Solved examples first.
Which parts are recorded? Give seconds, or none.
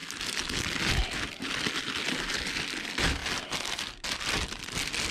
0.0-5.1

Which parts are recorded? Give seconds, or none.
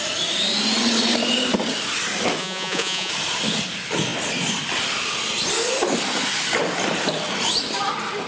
0.0-2.4; 3.1-8.3